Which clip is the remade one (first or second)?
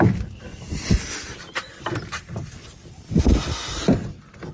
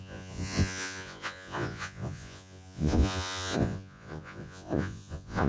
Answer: second